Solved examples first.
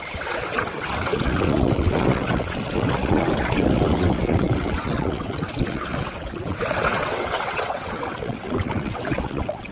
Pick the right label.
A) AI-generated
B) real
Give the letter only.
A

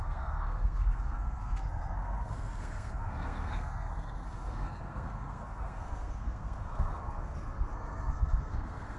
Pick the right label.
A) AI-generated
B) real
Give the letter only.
A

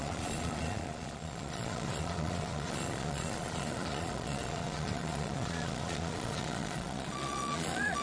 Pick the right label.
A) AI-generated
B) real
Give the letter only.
A